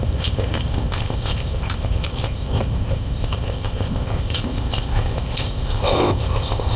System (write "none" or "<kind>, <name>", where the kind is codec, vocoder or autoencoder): codec, ZipCodec